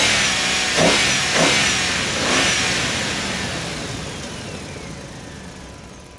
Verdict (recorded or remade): recorded